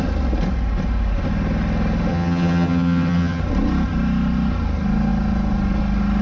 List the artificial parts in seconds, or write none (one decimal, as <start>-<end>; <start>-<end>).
2.1-3.4